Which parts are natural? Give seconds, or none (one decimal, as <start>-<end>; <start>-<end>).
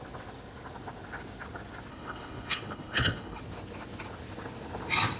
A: 0.0-1.9; 3.4-5.2